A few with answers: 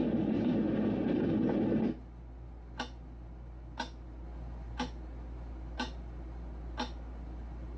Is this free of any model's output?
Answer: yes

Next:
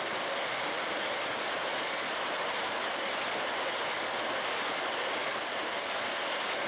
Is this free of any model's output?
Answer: yes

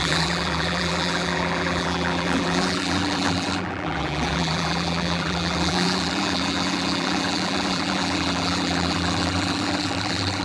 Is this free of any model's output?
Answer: no